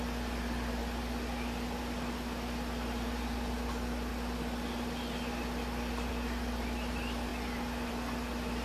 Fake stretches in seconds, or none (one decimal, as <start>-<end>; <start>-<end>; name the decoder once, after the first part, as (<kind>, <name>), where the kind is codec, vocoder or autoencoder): none